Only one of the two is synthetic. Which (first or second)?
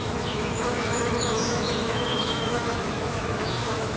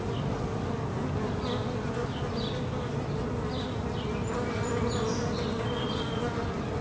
first